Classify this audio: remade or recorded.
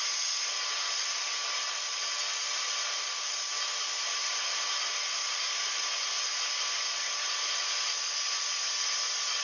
recorded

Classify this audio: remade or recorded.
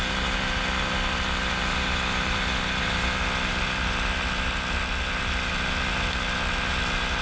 recorded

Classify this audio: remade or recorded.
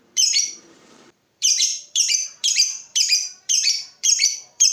remade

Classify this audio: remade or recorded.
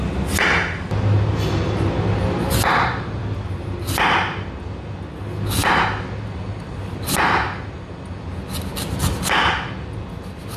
recorded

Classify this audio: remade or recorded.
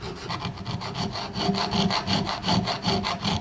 recorded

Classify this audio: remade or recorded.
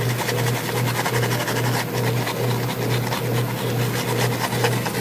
recorded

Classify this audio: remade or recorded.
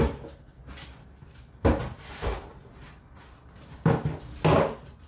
recorded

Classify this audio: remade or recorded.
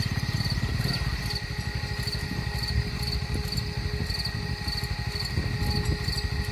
recorded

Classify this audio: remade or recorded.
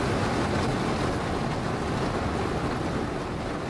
recorded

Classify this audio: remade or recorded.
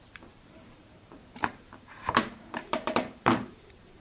remade